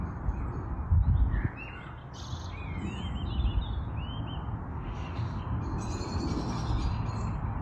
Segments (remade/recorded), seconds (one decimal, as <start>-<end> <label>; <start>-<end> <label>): 0.0-4.7 recorded; 4.7-5.4 remade; 5.4-7.6 recorded